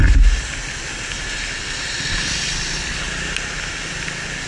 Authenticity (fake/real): real